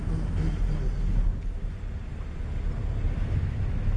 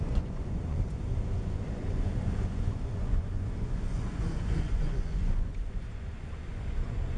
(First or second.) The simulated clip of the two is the second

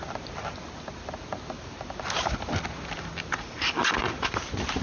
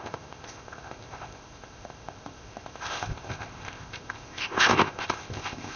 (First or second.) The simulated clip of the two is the second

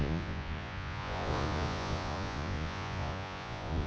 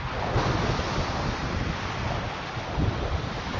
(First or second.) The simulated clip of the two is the first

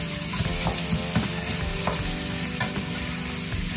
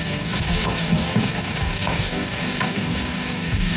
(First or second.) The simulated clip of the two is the second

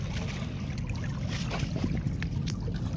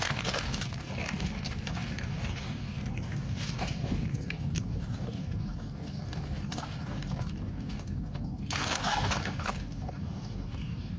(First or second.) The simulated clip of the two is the second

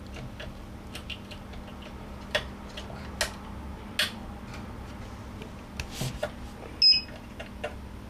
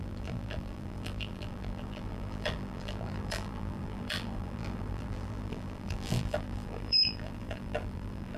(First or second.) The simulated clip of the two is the second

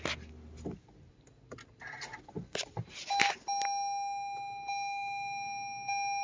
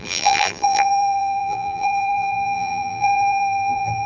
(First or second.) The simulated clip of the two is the second